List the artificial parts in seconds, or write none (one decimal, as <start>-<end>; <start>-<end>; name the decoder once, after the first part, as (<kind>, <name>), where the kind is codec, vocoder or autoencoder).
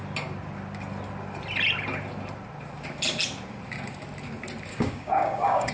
4.7-5.7 (codec, DAC)